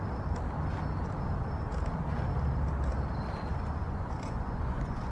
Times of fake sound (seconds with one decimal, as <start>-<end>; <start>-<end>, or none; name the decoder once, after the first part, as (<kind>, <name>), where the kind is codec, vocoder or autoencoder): 3.5-5.1 (vocoder, Vocos)